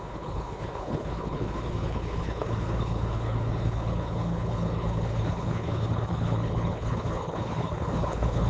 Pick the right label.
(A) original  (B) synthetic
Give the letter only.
B